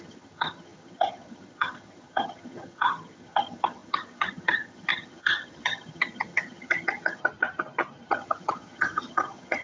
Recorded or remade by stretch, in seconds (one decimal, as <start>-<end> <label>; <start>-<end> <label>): 0.0-7.2 remade; 7.2-8.1 recorded; 8.1-9.6 remade